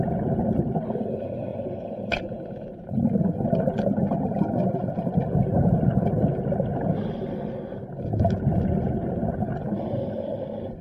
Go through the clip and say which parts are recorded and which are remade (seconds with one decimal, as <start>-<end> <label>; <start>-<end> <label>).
0.0-10.8 recorded